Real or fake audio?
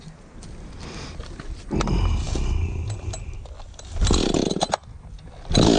real